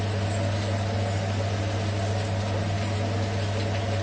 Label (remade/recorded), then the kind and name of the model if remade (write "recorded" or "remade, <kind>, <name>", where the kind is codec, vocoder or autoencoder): recorded